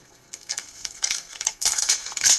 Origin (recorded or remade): remade